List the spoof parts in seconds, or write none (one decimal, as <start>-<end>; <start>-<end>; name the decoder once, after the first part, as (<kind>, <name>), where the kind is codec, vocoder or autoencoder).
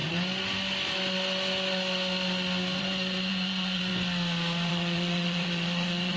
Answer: 2.8-3.9 (vocoder, Vocos); 4.7-6.2